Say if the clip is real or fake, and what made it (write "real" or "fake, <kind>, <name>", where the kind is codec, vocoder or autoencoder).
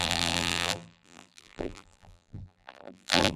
fake, vocoder, BigVGAN v2